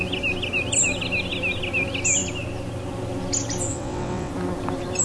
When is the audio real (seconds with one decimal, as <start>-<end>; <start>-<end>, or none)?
0.0-3.7; 4.3-5.0